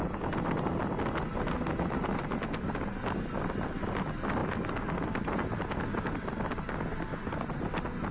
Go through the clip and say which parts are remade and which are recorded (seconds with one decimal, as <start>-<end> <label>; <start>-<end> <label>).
0.0-8.1 recorded

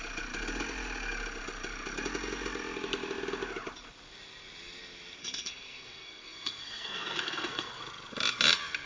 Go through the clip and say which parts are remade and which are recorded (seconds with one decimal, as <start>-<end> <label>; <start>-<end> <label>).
0.0-5.2 recorded; 5.2-7.8 remade; 7.8-8.9 recorded

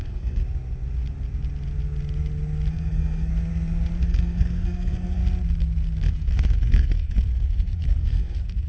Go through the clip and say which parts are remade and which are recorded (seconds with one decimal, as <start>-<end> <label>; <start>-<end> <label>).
0.0-0.4 remade; 0.4-2.7 recorded; 2.7-3.3 remade; 3.3-4.0 recorded; 4.0-5.2 remade; 5.2-6.1 recorded; 6.1-8.7 remade

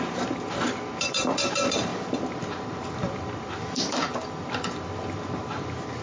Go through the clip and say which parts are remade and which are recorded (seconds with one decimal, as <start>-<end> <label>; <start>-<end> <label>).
0.0-6.0 remade

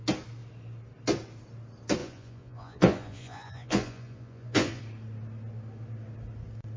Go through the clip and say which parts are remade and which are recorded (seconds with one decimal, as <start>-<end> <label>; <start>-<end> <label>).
0.0-2.0 recorded; 2.0-4.8 remade; 4.8-6.8 recorded

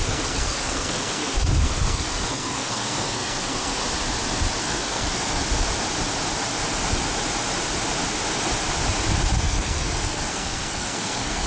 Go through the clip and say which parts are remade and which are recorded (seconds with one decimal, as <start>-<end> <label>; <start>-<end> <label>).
0.0-3.8 remade; 3.8-4.6 recorded; 4.6-5.4 remade; 5.4-9.4 recorded; 9.4-11.5 remade

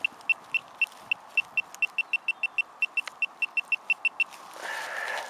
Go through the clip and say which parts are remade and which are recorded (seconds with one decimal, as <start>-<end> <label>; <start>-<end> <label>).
0.0-5.3 recorded

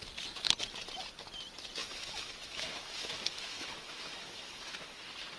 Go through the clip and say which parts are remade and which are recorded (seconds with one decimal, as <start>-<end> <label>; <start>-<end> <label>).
0.0-1.8 recorded; 1.8-5.0 remade; 5.0-5.4 recorded